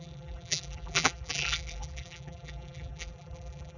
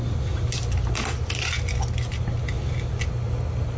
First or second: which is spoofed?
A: first